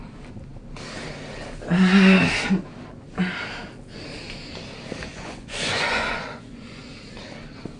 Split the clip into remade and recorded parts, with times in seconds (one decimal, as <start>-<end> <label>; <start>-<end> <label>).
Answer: 0.0-5.1 recorded; 5.1-6.9 remade; 6.9-7.8 recorded